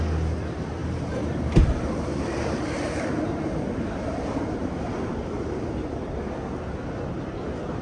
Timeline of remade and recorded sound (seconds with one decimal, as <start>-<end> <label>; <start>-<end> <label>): 0.0-0.8 recorded; 0.8-5.5 remade; 5.5-7.8 recorded